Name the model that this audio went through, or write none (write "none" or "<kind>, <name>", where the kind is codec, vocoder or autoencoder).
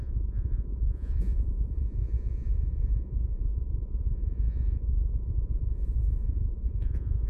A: vocoder, Vocos